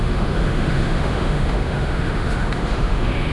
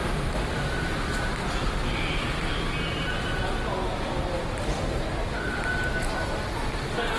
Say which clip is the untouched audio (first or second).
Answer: second